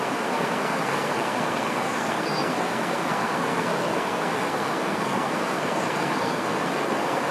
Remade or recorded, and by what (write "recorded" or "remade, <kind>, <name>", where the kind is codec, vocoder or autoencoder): remade, codec, SNAC